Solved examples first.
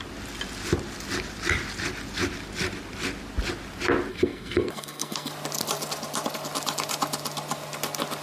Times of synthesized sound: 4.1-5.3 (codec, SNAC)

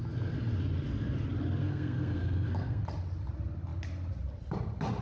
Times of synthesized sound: 1.6-2.8 (codec, SNAC)